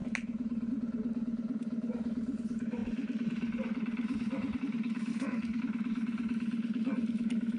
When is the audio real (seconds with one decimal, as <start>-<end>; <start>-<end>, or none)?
0.0-5.1; 5.6-7.6